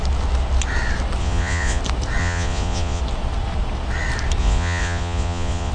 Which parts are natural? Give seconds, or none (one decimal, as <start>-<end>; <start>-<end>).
0.0-1.2; 1.8-2.2; 3.0-4.4